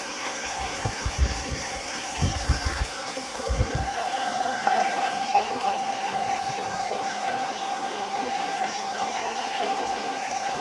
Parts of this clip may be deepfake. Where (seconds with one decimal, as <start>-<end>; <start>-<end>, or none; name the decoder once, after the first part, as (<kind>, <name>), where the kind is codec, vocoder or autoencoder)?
0.0-10.6 (codec, SNAC)